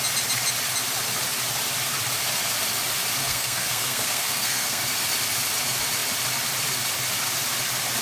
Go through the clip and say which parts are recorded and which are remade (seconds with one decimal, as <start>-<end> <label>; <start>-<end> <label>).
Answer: 0.0-3.2 recorded; 3.2-4.8 remade; 4.8-8.0 recorded